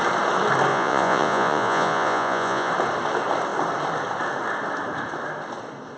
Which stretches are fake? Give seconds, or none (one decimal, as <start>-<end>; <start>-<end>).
0.7-2.7